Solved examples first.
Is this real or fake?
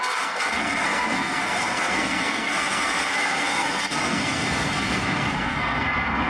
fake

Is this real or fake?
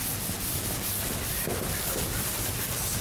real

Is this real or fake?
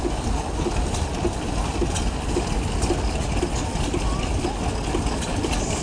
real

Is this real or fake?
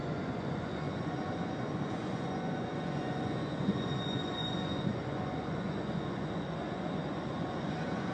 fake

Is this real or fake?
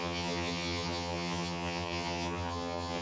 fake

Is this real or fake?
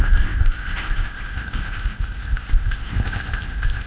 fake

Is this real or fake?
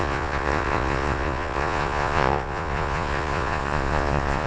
fake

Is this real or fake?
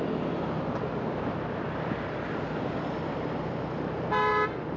real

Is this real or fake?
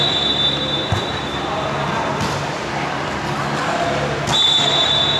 real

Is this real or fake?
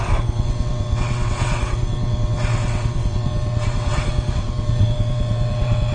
fake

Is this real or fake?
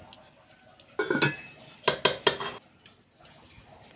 real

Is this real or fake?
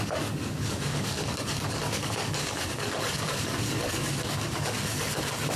fake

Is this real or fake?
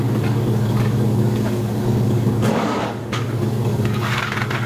fake